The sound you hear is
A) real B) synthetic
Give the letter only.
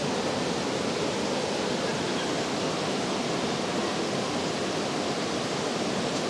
A